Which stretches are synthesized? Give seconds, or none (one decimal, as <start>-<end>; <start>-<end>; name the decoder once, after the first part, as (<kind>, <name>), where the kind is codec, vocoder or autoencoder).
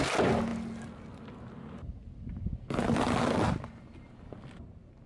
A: none